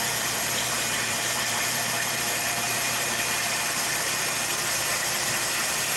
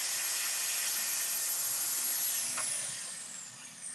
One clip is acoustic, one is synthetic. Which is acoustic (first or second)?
second